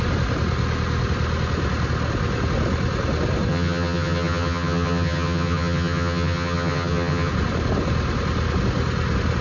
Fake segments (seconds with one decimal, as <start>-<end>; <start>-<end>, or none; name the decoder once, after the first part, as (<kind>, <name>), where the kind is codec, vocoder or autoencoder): 3.5-7.3 (vocoder, HiFi-GAN)